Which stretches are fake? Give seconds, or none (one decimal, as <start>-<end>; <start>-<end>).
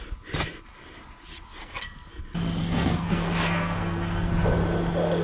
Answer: 1.6-2.2; 2.6-4.3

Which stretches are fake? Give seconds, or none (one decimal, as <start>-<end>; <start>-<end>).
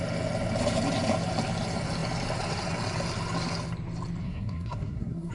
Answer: 4.2-5.3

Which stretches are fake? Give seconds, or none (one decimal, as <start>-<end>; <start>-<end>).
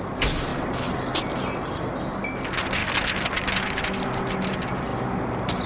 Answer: none